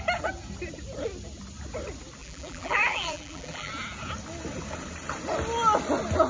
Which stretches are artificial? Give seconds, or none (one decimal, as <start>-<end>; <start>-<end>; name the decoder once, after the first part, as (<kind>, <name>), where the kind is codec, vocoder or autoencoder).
2.2-3.7 (vocoder, BigVGAN v2)